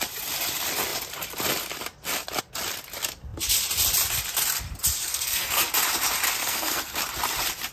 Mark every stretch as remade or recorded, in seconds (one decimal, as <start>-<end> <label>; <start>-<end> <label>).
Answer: 0.0-5.0 recorded; 5.0-5.7 remade; 5.7-6.4 recorded; 6.4-7.0 remade; 7.0-7.7 recorded